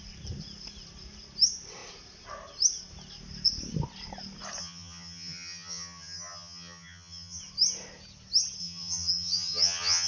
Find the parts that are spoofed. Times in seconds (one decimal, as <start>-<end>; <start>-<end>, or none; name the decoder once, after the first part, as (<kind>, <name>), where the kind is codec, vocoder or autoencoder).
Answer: 4.6-7.4 (vocoder, HiFi-GAN); 8.6-10.1